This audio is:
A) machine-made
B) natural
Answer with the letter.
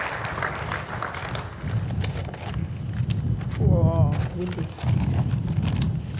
B